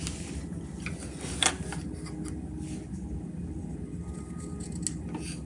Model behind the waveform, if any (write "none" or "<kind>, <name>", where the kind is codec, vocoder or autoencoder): none